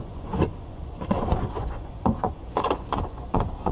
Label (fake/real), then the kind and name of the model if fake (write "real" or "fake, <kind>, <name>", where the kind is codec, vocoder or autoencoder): fake, vocoder, Vocos